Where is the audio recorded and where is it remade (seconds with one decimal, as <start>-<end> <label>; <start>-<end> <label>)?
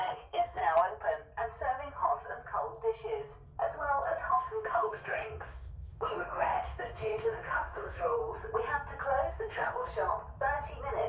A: 0.0-0.6 remade; 0.6-4.3 recorded; 4.3-8.2 remade; 8.2-9.3 recorded; 9.3-9.9 remade; 9.9-11.1 recorded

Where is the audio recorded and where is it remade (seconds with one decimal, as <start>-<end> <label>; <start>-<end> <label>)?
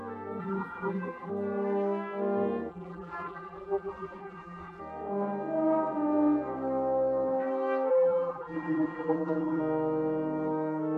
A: 0.0-0.4 recorded; 0.4-1.3 remade; 1.3-2.7 recorded; 2.7-4.8 remade; 4.8-7.9 recorded; 7.9-9.6 remade; 9.6-11.0 recorded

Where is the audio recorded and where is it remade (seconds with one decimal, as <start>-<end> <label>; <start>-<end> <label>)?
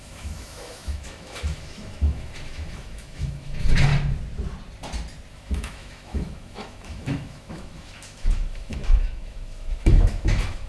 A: 0.0-3.9 remade; 3.9-5.3 recorded; 5.3-10.7 remade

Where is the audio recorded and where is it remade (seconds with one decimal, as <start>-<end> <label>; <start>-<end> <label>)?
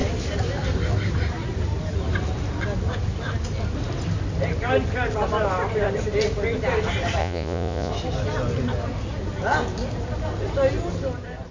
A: 0.0-7.2 recorded; 7.2-7.9 remade; 7.9-11.5 recorded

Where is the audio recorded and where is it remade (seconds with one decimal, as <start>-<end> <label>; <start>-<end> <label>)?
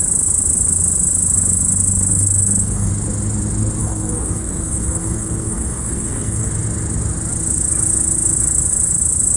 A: 0.0-2.1 recorded; 2.1-2.9 remade; 2.9-3.8 recorded; 3.8-6.5 remade; 6.5-9.4 recorded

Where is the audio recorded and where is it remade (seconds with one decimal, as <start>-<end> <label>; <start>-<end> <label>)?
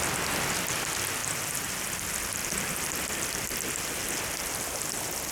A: 0.0-1.2 recorded; 1.2-2.0 remade; 2.0-2.4 recorded; 2.4-3.5 remade; 3.5-5.3 recorded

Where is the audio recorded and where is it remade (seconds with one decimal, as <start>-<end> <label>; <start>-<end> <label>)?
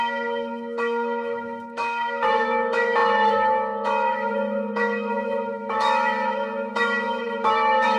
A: 0.0-8.0 remade